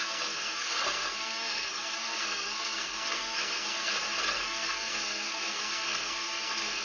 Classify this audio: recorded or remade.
remade